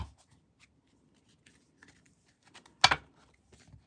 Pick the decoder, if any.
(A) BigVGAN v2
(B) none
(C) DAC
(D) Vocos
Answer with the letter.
B